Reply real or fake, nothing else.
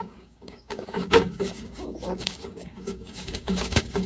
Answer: fake